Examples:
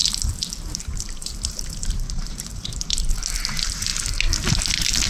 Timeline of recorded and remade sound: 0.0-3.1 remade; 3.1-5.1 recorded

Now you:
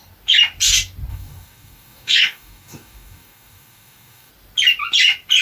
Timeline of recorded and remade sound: 0.0-1.1 recorded; 1.1-4.3 remade; 4.3-5.4 recorded

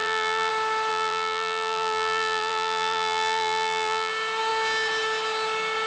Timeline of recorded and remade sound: 0.0-0.5 remade; 0.5-0.9 recorded; 0.9-4.1 remade; 4.1-5.9 recorded

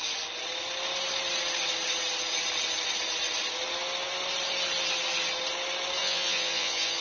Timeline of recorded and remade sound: 0.0-6.0 recorded; 6.0-7.0 remade

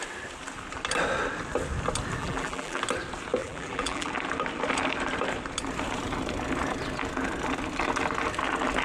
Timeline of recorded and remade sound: 0.0-2.2 recorded; 2.2-2.8 remade; 2.8-3.4 recorded; 3.4-4.1 remade; 4.1-8.8 recorded

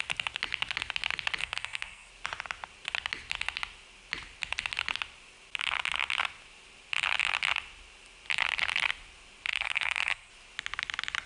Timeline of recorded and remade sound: 0.0-1.4 recorded; 1.4-2.1 remade; 2.1-9.5 recorded; 9.5-10.3 remade; 10.3-11.3 recorded